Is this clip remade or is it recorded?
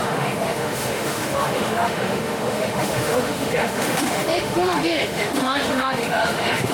remade